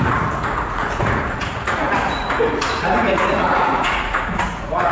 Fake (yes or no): yes